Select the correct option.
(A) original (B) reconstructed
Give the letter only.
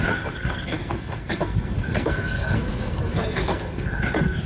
B